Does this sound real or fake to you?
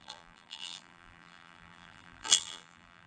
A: fake